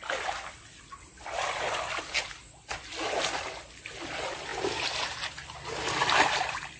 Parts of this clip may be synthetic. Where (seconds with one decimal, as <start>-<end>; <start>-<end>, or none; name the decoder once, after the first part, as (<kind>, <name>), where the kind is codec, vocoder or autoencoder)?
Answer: none